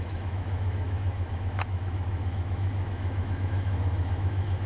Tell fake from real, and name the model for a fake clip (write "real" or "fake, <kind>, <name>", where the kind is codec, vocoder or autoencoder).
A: fake, autoencoder, DAC-VAE